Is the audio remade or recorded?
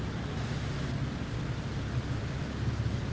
recorded